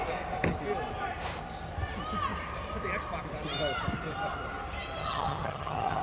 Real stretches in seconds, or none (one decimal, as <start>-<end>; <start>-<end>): 0.0-5.0